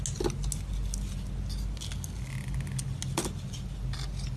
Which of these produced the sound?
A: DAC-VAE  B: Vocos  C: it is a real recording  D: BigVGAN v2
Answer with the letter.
C